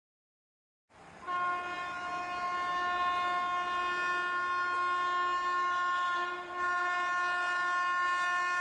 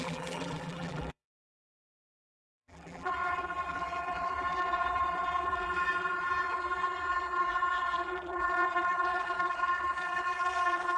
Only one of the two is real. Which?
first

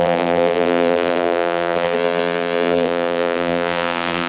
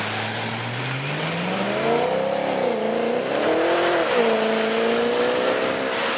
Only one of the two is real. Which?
second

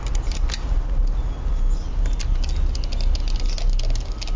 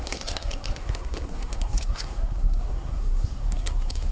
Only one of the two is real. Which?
first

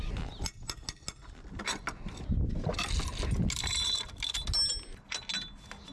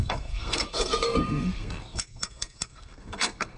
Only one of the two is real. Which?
first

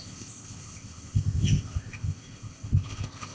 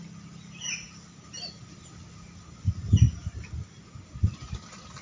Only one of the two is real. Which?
second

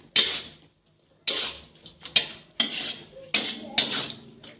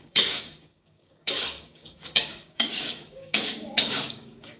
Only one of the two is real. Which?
first